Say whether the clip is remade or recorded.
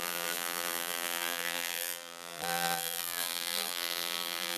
remade